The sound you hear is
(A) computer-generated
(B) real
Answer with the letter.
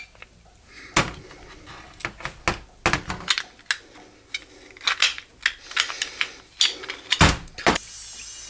B